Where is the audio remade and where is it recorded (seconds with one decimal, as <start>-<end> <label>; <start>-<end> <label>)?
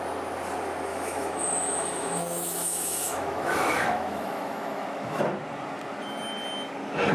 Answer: 0.0-0.9 recorded; 0.9-5.2 remade; 5.2-7.1 recorded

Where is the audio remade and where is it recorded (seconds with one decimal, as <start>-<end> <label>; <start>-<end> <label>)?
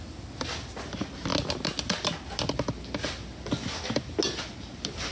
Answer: 0.0-5.1 recorded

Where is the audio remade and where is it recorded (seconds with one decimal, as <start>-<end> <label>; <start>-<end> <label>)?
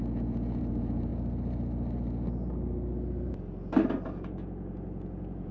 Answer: 0.0-1.1 remade; 1.1-4.1 recorded; 4.1-5.5 remade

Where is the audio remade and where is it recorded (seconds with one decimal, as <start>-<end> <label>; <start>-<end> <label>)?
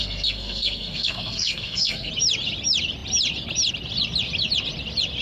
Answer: 0.0-2.1 remade; 2.1-5.2 recorded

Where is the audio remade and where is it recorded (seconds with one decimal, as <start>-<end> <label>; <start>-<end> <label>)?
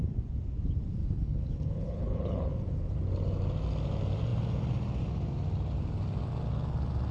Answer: 0.0-1.0 recorded; 1.0-2.5 remade; 2.5-7.1 recorded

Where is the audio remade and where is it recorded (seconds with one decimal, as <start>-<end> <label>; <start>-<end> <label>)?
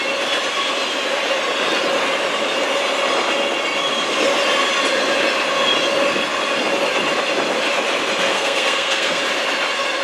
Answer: 0.0-8.3 recorded; 8.3-9.2 remade; 9.2-10.0 recorded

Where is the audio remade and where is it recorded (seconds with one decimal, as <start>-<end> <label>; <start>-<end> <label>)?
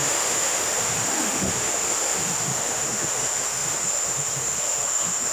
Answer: 0.0-5.3 remade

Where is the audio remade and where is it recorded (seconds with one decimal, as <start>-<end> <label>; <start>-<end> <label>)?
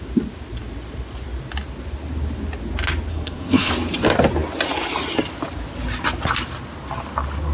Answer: 0.0-3.1 recorded; 3.1-3.7 remade; 3.7-7.5 recorded